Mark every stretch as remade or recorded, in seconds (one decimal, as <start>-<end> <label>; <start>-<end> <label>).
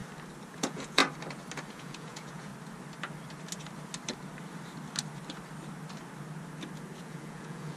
0.0-0.6 recorded; 0.6-1.0 remade; 1.0-1.7 recorded; 1.7-2.5 remade; 2.5-7.0 recorded; 7.0-7.8 remade